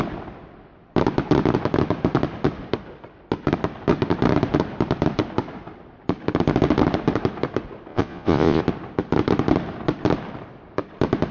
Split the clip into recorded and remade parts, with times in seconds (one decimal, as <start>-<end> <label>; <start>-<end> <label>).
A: 0.0-7.9 recorded; 7.9-8.6 remade; 8.6-11.3 recorded